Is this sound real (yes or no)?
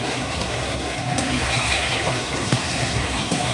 no